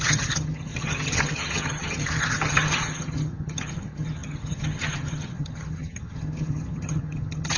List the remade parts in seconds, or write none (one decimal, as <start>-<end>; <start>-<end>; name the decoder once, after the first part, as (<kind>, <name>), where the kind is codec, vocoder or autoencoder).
0.0-7.6 (vocoder, HiFi-GAN)